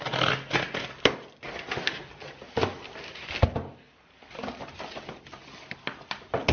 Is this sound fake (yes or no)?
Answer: no